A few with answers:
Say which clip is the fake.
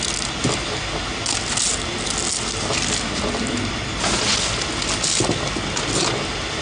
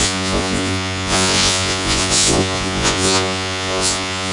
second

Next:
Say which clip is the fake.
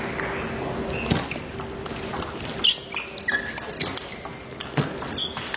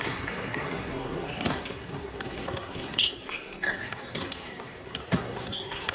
second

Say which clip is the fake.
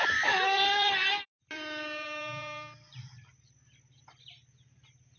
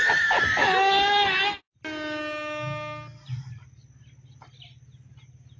first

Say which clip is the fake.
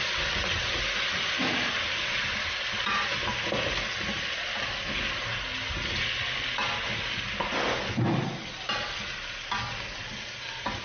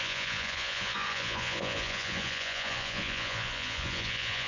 second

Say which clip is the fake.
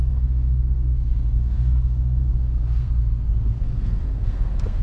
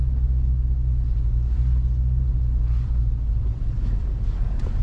first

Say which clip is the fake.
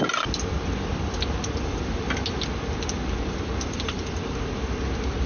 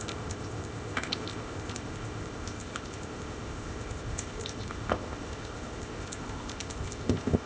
second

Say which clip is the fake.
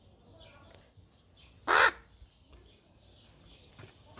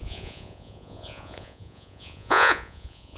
second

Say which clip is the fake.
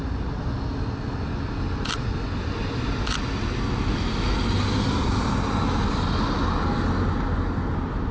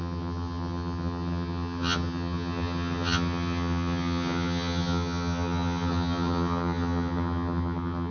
second